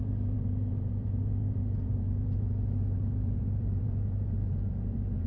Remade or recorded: remade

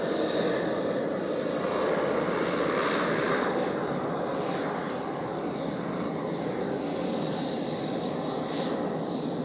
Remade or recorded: recorded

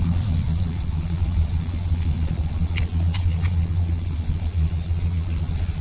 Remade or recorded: remade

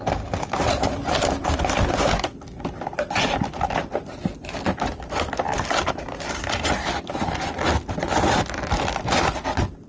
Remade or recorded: recorded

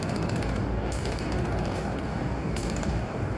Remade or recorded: remade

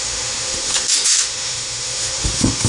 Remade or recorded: remade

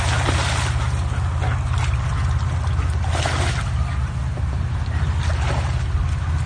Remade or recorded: recorded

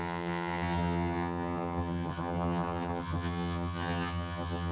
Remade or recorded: remade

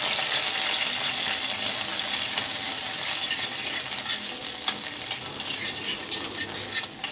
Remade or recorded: recorded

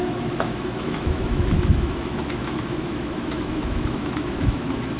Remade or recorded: remade